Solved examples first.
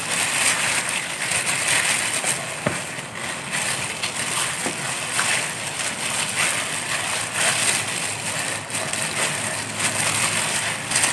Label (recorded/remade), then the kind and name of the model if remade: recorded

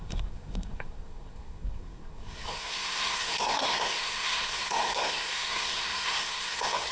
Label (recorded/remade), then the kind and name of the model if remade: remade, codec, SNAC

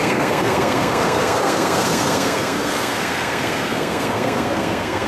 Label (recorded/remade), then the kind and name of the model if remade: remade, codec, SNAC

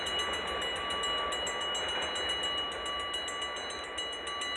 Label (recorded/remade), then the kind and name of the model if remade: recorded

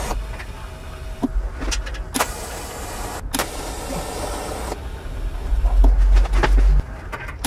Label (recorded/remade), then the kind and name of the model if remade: recorded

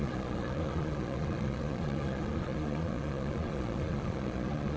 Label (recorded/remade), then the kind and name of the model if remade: remade, vocoder, Vocos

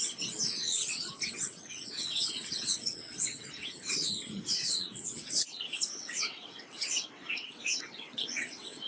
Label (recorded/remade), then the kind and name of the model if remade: remade, vocoder, WaveNeXt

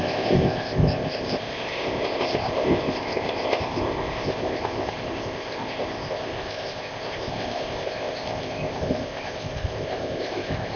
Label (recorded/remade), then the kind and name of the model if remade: remade, codec, ZipCodec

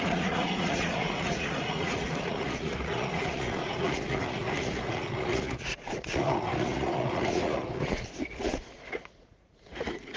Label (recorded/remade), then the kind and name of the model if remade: remade, vocoder, Vocos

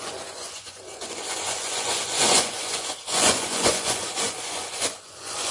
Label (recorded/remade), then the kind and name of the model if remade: remade, vocoder, Vocos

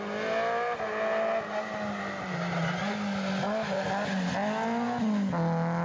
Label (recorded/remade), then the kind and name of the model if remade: recorded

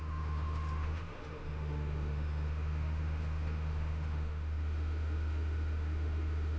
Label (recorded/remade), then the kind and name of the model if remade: remade, autoencoder, DAC-VAE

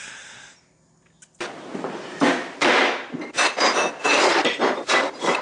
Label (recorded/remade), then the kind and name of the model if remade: recorded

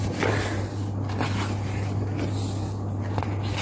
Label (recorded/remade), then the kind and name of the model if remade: recorded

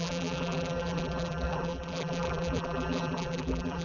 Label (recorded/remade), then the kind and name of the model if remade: remade, vocoder, BigVGAN v2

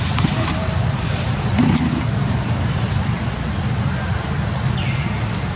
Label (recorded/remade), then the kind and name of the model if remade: remade, vocoder, BigVGAN v2